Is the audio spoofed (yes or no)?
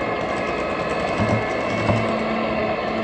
no